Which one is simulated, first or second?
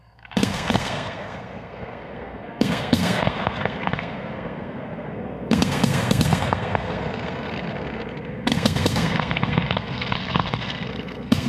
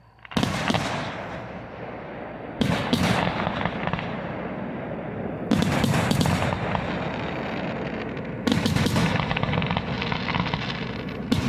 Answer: first